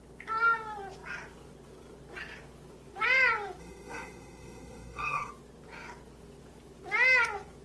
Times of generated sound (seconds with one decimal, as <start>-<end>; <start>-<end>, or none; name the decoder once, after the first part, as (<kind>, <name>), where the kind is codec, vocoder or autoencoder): 3.6-5.3 (codec, SNAC)